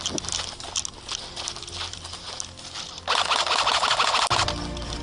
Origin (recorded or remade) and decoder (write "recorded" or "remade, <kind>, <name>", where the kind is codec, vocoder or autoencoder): recorded